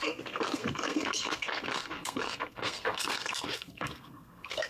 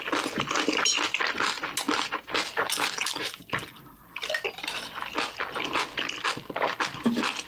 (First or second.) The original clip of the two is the second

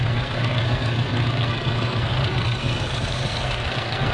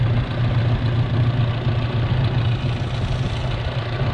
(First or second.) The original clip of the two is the second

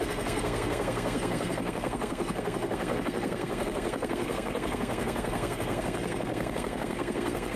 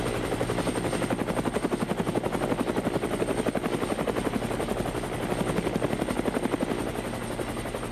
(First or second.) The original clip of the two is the second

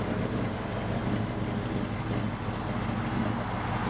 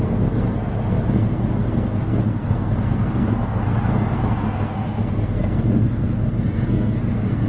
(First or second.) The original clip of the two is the first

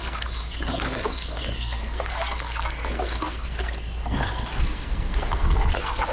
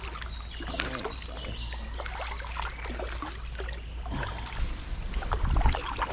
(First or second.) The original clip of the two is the second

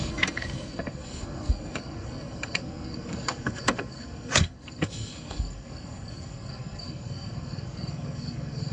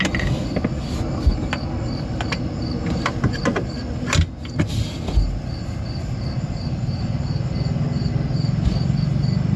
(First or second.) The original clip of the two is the second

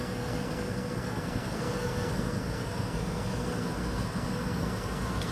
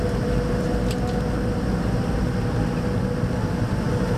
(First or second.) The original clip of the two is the second